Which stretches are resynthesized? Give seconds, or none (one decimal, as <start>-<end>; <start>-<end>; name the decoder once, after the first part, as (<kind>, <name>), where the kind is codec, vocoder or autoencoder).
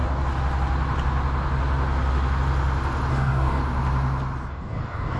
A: 3.1-3.6 (codec, DAC); 4.5-5.2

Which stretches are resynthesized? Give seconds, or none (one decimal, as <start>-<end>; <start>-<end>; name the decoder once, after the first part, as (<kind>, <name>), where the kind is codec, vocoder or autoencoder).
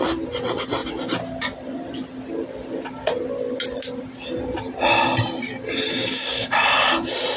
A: 5.9-6.5 (codec, DAC)